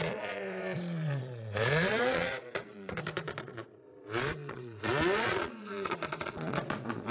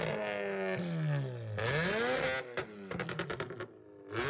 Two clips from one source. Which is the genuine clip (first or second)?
second